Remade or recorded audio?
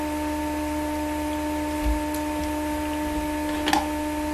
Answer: recorded